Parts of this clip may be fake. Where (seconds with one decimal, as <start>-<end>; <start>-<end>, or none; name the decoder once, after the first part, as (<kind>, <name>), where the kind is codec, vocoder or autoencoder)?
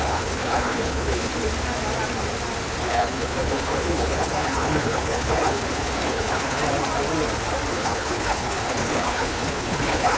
0.0-1.3 (codec, HILCodec); 2.8-6.6; 7.7-10.2